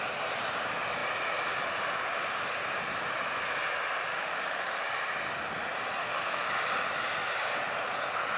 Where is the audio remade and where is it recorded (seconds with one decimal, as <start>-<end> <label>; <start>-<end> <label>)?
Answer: 0.0-4.1 recorded; 4.1-4.8 remade; 4.8-6.0 recorded; 6.0-6.5 remade; 6.5-8.4 recorded